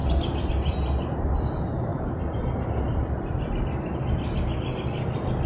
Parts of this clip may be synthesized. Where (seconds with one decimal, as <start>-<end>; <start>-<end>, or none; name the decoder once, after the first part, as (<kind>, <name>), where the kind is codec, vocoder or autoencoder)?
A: 0.0-0.5 (vocoder, BigVGAN v2); 1.9-3.5